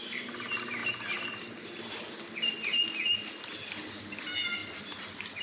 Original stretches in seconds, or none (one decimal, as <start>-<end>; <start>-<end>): 0.0-5.4